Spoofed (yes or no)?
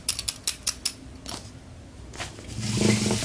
no